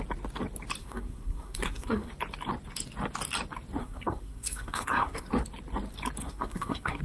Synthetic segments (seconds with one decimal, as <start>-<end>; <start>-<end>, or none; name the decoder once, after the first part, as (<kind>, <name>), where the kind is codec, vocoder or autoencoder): 0.8-2.1 (codec, SNAC); 3.8-5.3; 6.2-7.0